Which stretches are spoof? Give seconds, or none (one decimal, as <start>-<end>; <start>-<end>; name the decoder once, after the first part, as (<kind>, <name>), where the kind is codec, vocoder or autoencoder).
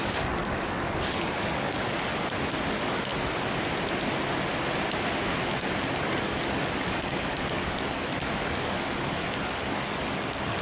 0.0-2.1 (codec, DAC); 2.7-3.1; 5.9-10.6